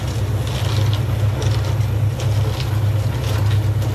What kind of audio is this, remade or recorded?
recorded